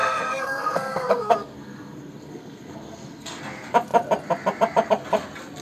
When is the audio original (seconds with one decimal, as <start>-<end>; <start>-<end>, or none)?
3.4-5.6